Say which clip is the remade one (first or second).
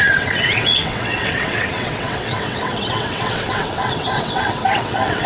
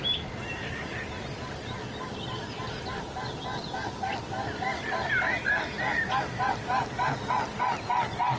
first